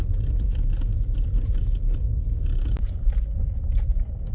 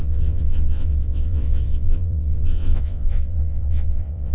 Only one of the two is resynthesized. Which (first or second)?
second